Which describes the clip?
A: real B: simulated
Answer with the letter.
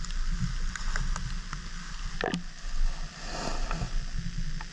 A